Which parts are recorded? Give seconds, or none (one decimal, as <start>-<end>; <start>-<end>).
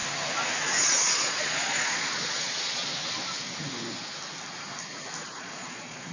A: 0.0-0.8; 2.9-5.2